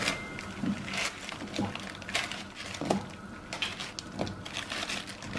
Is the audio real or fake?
real